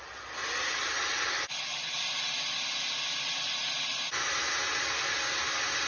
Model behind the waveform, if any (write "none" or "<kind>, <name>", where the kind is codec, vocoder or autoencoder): none